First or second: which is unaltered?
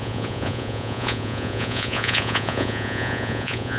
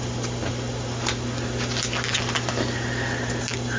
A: second